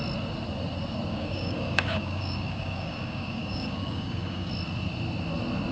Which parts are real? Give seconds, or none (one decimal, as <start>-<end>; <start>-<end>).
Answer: 0.0-1.1; 4.5-5.7